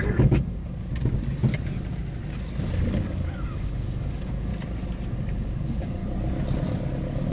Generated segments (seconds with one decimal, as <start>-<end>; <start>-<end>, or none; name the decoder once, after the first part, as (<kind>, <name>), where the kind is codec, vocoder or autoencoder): 0.0-0.6 (codec, DAC); 2.9-4.5; 5.2-6.0